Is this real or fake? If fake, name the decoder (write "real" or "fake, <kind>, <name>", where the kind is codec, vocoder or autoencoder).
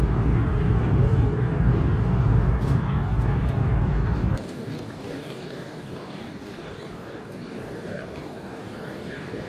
fake, codec, DAC